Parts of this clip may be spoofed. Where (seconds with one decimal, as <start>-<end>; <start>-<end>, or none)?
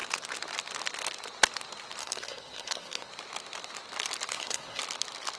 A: 2.0-3.1; 4.3-4.8